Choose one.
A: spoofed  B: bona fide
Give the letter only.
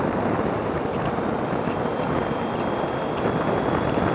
B